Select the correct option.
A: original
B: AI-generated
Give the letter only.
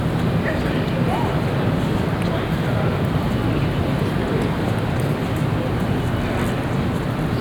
A